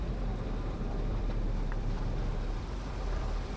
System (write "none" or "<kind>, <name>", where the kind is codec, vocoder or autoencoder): vocoder, BigVGAN v2